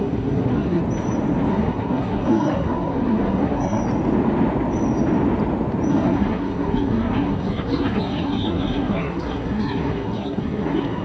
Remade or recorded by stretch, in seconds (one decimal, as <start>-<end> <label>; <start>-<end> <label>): 0.0-0.8 remade; 0.8-1.5 recorded; 1.5-3.8 remade; 3.8-5.9 recorded; 5.9-11.0 remade